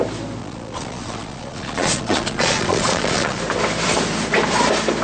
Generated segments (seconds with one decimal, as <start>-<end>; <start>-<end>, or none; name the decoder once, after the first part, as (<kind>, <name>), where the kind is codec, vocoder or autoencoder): 0.4-3.4 (vocoder, Vocos)